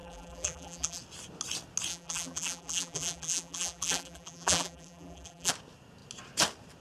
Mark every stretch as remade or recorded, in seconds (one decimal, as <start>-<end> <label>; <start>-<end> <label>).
0.0-1.0 remade; 1.0-1.9 recorded; 1.9-5.5 remade; 5.5-6.8 recorded